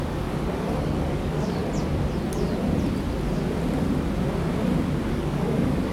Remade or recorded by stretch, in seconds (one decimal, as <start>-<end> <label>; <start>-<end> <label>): 0.0-1.6 remade; 1.6-5.1 recorded; 5.1-5.9 remade